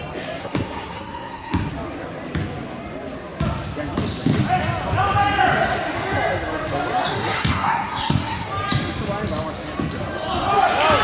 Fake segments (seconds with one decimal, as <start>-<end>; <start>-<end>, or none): 0.4-1.7; 7.1-8.5